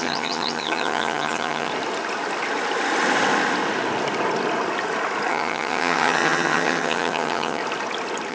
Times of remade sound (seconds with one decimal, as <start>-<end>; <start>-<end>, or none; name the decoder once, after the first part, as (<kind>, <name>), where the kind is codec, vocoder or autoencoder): 0.0-1.7 (vocoder, HiFi-GAN); 5.3-7.6